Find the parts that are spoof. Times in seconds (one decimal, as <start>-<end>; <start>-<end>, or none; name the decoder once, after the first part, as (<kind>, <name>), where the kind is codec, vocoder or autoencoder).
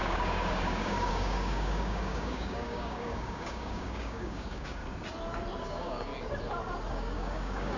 0.0-4.8 (codec, DAC); 5.6-6.1; 6.9-7.8